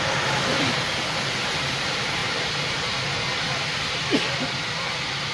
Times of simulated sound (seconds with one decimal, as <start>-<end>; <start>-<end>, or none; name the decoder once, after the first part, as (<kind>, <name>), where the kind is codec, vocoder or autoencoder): 2.2-2.8 (vocoder, BigVGAN v2)